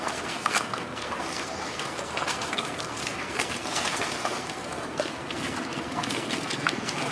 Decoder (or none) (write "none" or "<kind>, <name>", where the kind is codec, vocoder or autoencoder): codec, SNAC